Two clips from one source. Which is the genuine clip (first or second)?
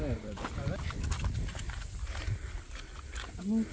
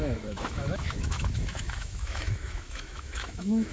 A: first